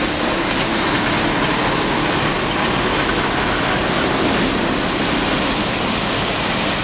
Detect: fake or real real